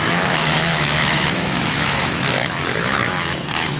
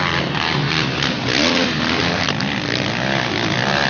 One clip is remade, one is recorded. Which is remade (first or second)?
first